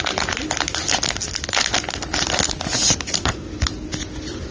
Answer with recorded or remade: recorded